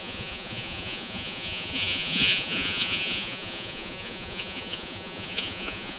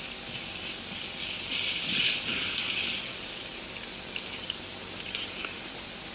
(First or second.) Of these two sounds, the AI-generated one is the first